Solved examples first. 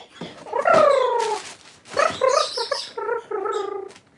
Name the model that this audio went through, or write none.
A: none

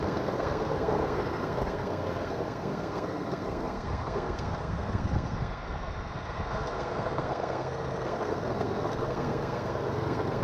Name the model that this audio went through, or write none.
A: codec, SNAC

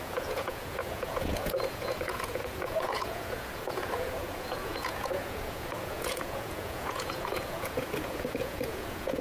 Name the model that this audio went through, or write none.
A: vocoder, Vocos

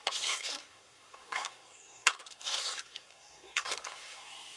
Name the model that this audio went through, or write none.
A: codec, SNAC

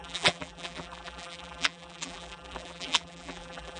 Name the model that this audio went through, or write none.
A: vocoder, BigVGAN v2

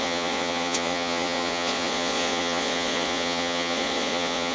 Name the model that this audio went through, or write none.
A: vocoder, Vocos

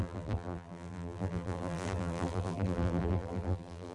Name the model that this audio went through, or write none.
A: vocoder, BigVGAN v2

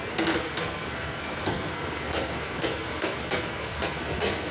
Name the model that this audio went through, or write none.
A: codec, SNAC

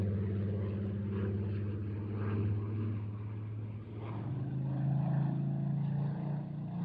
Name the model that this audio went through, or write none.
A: none